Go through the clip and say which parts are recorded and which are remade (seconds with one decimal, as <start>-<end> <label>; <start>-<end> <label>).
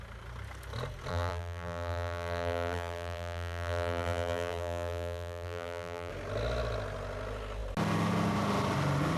0.0-1.1 recorded; 1.1-6.1 remade; 6.1-9.2 recorded